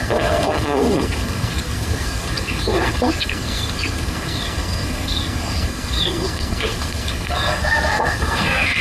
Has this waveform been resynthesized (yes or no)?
yes